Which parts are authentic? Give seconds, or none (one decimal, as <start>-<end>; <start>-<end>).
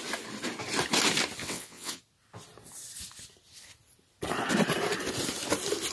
0.0-1.4; 2.0-5.9